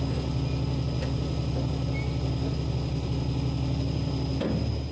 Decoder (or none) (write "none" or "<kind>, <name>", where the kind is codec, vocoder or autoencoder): none